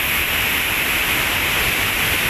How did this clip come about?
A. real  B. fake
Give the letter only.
A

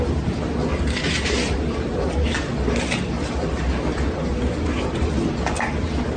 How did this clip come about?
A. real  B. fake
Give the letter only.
A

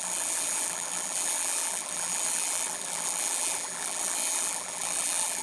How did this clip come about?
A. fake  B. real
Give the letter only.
A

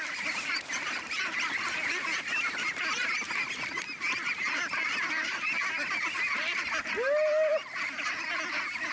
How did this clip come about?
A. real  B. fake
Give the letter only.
A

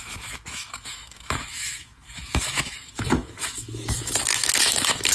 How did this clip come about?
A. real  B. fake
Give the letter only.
B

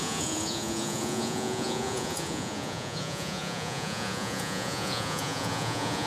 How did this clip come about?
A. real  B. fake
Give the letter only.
B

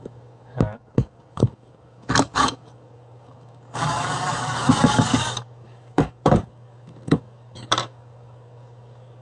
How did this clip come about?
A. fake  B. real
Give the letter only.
A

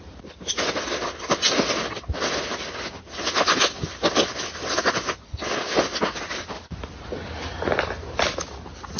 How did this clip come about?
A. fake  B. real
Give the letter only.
B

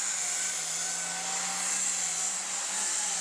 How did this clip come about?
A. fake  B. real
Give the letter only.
B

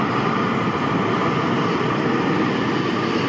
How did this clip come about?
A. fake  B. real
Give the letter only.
B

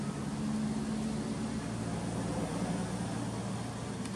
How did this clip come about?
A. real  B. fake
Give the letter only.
A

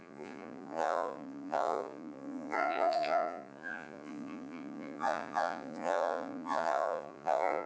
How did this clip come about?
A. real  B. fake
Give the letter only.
B